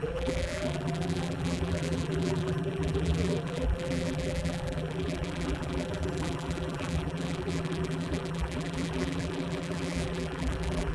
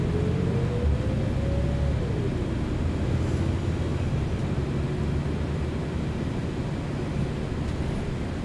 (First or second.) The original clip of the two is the second